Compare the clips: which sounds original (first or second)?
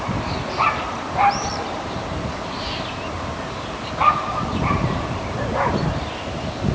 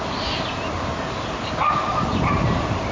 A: second